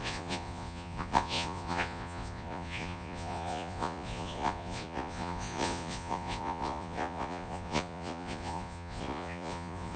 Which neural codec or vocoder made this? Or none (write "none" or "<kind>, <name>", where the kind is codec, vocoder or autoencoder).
vocoder, Vocos